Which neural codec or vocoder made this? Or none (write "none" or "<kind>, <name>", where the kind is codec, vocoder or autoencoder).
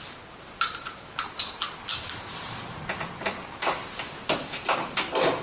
none